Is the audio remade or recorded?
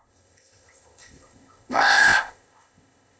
remade